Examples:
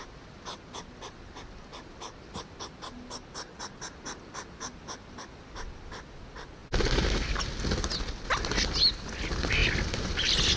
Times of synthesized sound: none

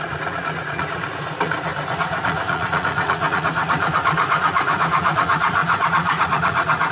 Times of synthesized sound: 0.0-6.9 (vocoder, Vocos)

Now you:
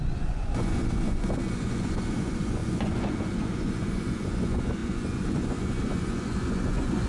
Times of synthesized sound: 0.0-7.1 (vocoder, Vocos)

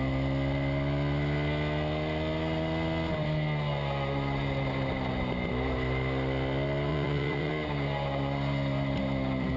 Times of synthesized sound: 6.9-7.5 (vocoder, Vocos)

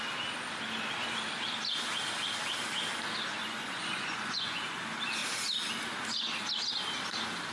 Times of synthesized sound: 3.4-4.8 (vocoder, Vocos)

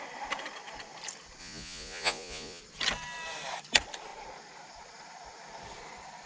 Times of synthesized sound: 1.4-2.6 (vocoder, Vocos)

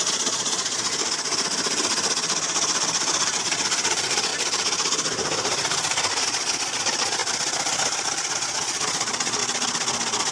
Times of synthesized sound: 0.0-0.9 (vocoder, Vocos); 3.4-4.3; 6.2-7.2; 8.3-9.4

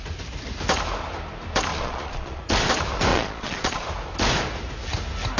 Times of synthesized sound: 1.7-2.4 (vocoder, Vocos); 3.1-3.9